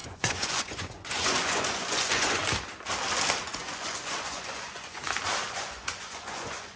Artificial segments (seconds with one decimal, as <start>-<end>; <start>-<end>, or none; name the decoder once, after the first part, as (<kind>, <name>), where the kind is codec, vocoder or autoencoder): 0.0-2.4 (vocoder, Vocos); 3.4-5.0; 5.5-6.8